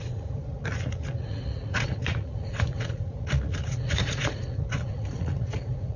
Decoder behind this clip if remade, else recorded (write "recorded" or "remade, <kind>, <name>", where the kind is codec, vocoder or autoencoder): remade, vocoder, Vocos